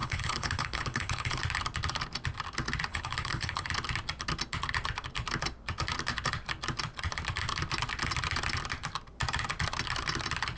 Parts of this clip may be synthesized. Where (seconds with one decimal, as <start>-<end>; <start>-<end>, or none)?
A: 0.0-1.4; 2.9-3.7